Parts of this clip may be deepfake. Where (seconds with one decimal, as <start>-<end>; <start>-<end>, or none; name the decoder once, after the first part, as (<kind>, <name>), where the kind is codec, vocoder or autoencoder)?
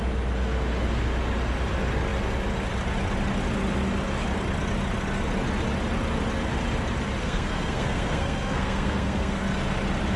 7.2-9.4 (codec, SNAC)